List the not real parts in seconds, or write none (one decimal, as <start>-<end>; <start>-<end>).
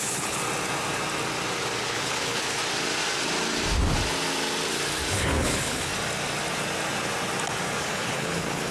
0.0-0.4; 1.8-2.6; 5.1-5.9; 7.8-8.7